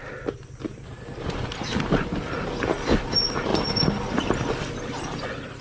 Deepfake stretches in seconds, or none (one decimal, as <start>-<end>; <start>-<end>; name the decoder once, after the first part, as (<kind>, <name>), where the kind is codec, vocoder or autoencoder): none